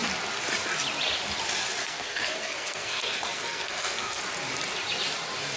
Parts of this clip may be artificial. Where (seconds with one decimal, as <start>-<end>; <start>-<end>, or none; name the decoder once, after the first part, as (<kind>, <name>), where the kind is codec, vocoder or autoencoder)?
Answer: 1.8-4.2 (codec, SNAC)